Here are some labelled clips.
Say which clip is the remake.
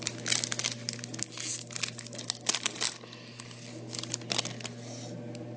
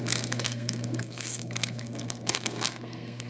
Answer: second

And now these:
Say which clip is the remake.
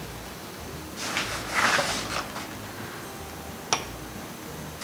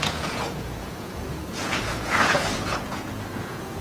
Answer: second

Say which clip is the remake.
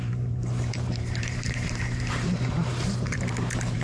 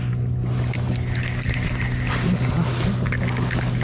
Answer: first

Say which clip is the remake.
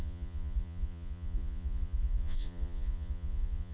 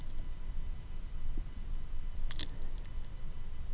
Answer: first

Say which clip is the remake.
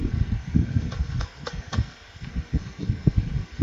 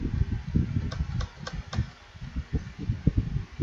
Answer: first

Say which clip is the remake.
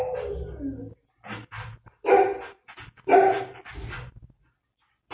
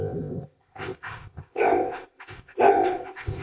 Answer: second